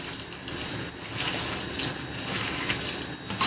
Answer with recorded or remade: recorded